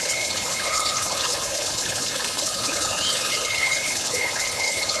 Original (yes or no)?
no